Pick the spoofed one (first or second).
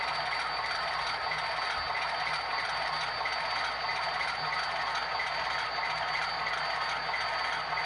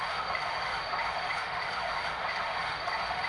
second